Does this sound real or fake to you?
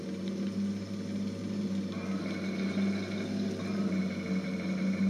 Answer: real